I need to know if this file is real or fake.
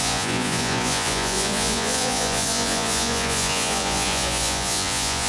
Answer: fake